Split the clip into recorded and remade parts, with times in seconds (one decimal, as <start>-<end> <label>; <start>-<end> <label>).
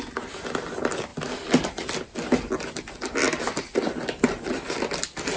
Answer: 0.0-1.1 remade; 1.1-4.3 recorded; 4.3-5.4 remade